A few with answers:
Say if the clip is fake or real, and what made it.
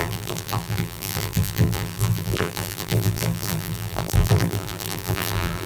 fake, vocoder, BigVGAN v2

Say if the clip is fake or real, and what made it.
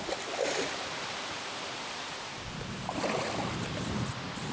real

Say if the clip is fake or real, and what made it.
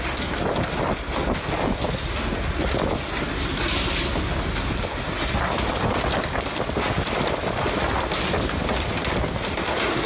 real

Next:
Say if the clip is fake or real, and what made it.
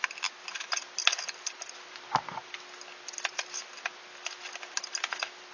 real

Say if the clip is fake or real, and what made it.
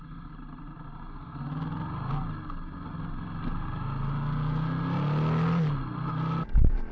real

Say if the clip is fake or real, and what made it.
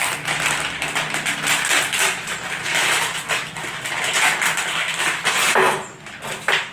real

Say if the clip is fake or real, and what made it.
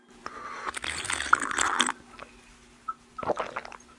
real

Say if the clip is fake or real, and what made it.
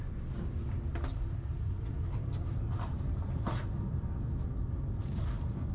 fake, vocoder, BigVGAN v2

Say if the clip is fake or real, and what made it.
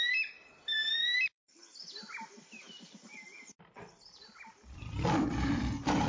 fake, vocoder, BigVGAN v2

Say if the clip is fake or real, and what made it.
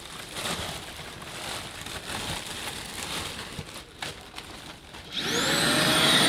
fake, vocoder, BigVGAN v2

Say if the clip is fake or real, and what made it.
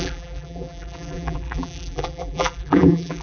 fake, vocoder, BigVGAN v2